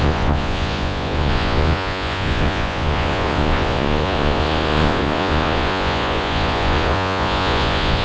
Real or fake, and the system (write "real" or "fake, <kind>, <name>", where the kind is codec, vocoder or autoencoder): fake, vocoder, Vocos